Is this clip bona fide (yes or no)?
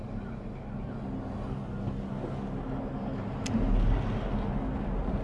yes